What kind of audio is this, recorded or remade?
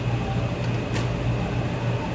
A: recorded